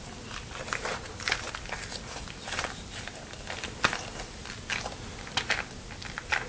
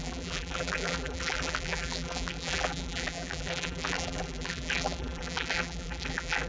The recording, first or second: first